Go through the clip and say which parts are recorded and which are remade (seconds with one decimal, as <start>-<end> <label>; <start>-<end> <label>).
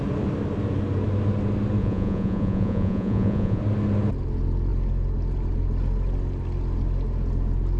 0.0-1.8 recorded; 1.8-3.6 remade; 3.6-7.8 recorded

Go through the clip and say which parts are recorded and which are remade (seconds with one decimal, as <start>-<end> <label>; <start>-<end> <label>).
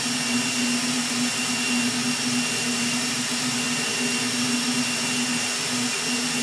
0.0-6.4 recorded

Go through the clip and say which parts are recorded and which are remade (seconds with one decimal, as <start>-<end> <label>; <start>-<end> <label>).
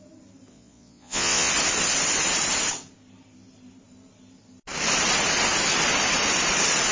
0.0-0.5 recorded; 0.5-1.5 remade; 1.5-6.9 recorded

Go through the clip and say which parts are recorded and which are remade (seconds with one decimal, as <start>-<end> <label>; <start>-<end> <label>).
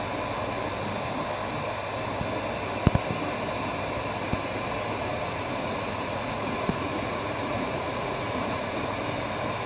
0.0-5.0 recorded; 5.0-9.0 remade; 9.0-9.7 recorded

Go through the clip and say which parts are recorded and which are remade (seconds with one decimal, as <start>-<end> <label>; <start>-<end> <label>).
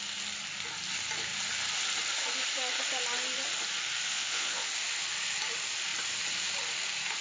0.0-4.1 recorded; 4.1-4.7 remade; 4.7-7.2 recorded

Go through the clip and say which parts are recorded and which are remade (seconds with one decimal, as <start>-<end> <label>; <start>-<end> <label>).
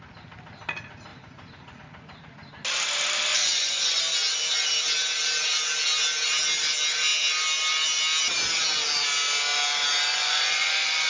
0.0-1.1 recorded; 1.1-1.8 remade; 1.8-3.3 recorded; 3.3-4.0 remade; 4.0-10.1 recorded; 10.1-11.1 remade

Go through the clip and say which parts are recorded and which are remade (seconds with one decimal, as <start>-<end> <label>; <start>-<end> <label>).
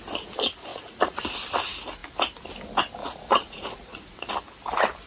0.0-0.7 recorded; 0.7-1.2 remade; 1.2-3.0 recorded; 3.0-4.3 remade; 4.3-5.1 recorded